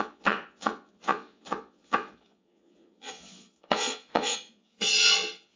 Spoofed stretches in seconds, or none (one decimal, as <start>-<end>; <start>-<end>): 0.0-5.6